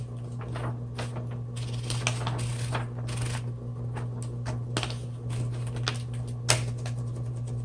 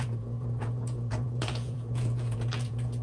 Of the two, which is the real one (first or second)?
first